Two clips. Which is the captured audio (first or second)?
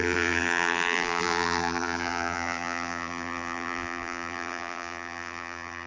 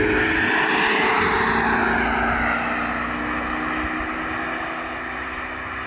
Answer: second